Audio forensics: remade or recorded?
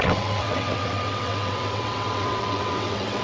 remade